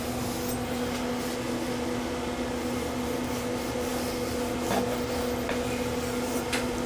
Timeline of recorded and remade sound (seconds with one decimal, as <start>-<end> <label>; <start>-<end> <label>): 0.0-6.9 recorded